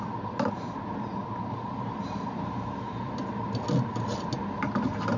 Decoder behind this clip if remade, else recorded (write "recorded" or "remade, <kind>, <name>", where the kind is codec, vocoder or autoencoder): recorded